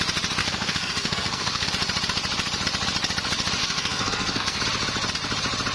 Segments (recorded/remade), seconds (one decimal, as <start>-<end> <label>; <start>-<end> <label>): 0.0-0.4 recorded; 0.4-1.7 remade; 1.7-3.6 recorded; 3.6-4.6 remade; 4.6-5.7 recorded